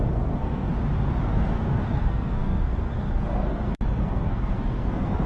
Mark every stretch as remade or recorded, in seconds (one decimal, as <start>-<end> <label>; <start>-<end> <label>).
0.0-0.7 remade; 0.7-1.3 recorded; 1.3-5.3 remade